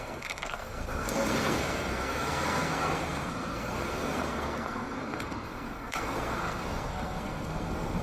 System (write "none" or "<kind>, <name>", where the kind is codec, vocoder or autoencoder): codec, SNAC